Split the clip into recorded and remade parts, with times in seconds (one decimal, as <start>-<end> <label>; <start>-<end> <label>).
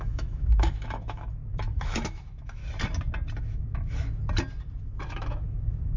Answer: 0.0-2.6 remade; 2.6-3.4 recorded; 3.4-4.2 remade; 4.2-4.8 recorded; 4.8-6.0 remade